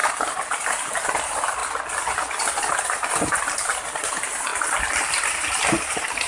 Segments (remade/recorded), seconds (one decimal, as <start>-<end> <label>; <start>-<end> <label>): 0.0-6.3 recorded